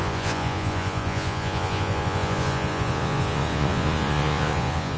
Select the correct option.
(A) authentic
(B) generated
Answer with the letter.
B